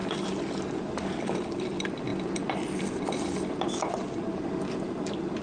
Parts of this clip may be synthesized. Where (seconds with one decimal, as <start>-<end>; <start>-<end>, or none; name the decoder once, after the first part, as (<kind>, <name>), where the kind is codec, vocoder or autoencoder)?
none